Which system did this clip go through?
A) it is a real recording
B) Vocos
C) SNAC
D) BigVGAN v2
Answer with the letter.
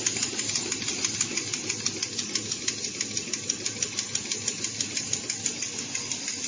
A